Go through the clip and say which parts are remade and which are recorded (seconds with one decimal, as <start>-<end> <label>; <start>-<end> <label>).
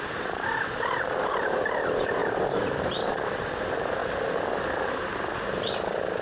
0.0-4.0 remade; 4.0-6.2 recorded